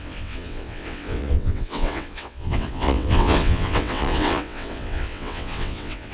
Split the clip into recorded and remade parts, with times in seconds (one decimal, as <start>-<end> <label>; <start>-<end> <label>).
0.0-6.1 remade